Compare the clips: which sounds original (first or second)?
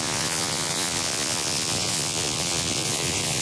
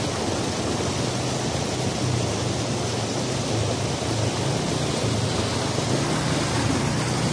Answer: second